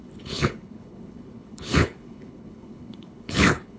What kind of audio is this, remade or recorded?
remade